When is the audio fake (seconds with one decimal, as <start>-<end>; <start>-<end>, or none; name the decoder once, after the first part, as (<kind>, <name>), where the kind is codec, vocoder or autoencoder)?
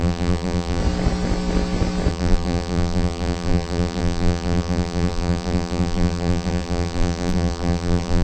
0.0-0.8 (vocoder, BigVGAN v2); 2.1-8.2